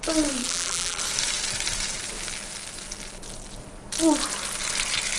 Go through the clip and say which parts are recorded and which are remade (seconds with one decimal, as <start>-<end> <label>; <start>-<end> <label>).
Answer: 0.0-0.4 recorded; 0.4-1.0 remade; 1.0-5.2 recorded